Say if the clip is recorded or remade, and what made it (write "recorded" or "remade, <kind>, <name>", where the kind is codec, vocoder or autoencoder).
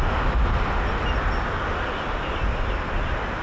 recorded